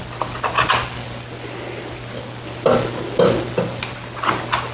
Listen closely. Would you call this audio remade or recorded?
recorded